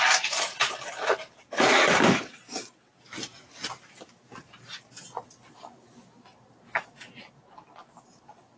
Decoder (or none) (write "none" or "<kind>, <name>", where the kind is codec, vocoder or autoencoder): none